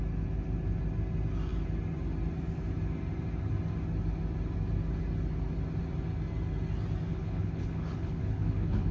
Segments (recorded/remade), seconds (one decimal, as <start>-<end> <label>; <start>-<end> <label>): 0.0-7.1 recorded; 7.1-8.9 remade

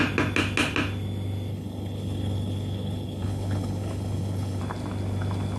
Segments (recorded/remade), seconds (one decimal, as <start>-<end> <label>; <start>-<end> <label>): 0.0-1.5 recorded; 1.5-4.6 remade; 4.6-5.6 recorded

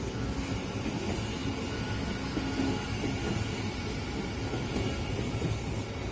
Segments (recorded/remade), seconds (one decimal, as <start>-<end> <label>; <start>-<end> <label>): 0.0-6.1 recorded

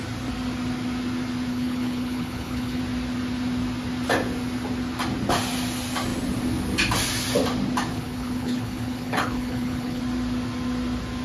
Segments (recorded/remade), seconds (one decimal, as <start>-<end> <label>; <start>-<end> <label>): 0.0-1.5 recorded; 1.5-2.8 remade; 2.8-7.9 recorded; 7.9-10.0 remade; 10.0-11.2 recorded

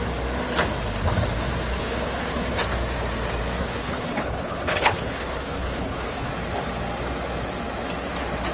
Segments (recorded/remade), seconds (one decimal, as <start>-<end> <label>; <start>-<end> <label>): 0.0-1.8 recorded; 1.8-2.6 remade; 2.6-3.6 recorded; 3.6-6.3 remade; 6.3-8.5 recorded

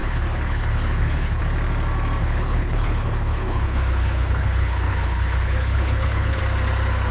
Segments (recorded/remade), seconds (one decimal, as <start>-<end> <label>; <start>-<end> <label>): 0.0-1.4 remade; 1.4-2.2 recorded; 2.2-6.4 remade; 6.4-7.1 recorded